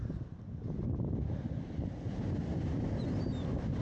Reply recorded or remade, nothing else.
recorded